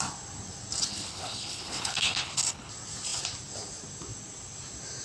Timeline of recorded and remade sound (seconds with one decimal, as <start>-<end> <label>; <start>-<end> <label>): 0.0-0.9 recorded; 0.9-2.7 remade; 2.7-5.0 recorded